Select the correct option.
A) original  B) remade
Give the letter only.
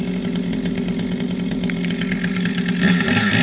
A